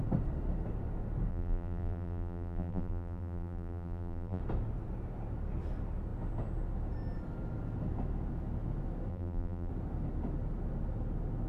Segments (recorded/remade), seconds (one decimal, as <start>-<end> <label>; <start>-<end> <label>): 0.0-1.3 recorded; 1.3-4.4 remade; 4.4-9.1 recorded; 9.1-9.7 remade; 9.7-11.5 recorded